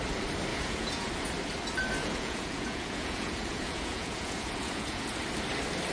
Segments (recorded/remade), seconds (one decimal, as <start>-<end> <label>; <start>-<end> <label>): 0.0-0.5 recorded; 0.5-1.1 remade; 1.1-2.0 recorded; 2.0-5.2 remade; 5.2-5.9 recorded